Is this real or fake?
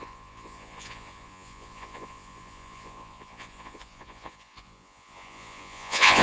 fake